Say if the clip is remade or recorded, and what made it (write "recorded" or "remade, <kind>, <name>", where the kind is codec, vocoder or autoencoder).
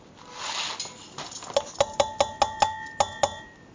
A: recorded